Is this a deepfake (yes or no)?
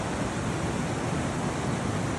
no